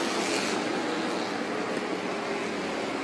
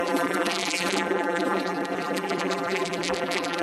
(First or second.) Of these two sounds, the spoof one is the second